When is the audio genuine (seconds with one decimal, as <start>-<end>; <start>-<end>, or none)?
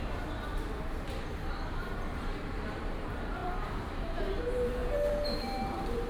none